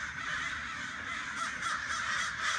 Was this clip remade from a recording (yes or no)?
no